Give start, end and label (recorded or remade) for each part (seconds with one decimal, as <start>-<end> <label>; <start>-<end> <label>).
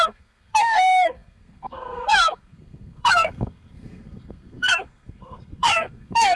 0.0-6.4 remade